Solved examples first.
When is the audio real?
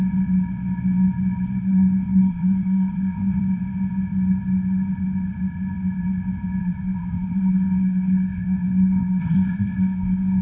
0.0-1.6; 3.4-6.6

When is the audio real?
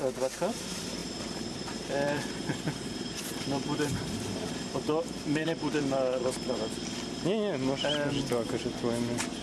0.0-1.0; 5.8-9.4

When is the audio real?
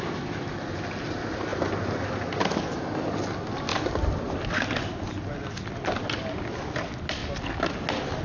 0.0-8.2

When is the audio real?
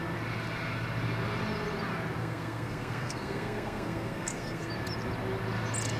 0.0-2.2; 4.7-6.0